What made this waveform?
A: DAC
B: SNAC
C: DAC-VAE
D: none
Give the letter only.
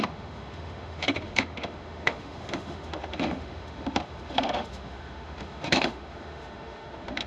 C